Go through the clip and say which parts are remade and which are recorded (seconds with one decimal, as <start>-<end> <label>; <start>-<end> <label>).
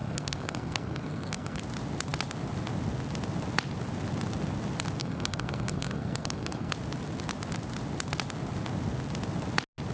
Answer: 0.0-1.6 remade; 1.6-5.0 recorded; 5.0-6.7 remade; 6.7-9.9 recorded